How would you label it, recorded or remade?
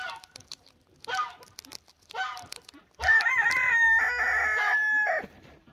recorded